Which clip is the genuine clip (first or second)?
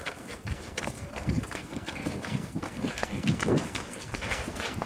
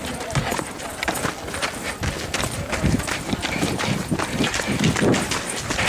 second